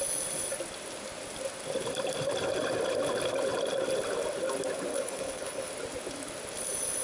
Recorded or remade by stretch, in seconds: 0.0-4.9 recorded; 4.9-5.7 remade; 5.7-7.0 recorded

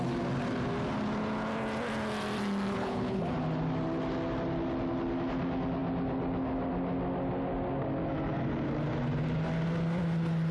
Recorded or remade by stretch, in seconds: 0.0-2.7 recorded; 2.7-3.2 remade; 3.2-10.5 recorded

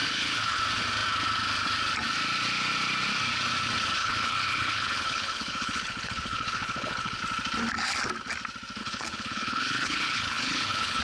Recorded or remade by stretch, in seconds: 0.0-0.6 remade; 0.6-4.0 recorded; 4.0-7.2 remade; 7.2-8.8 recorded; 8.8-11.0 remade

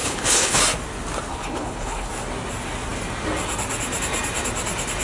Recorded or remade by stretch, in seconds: 0.0-0.6 remade; 0.6-1.3 recorded; 1.3-2.1 remade; 2.1-5.0 recorded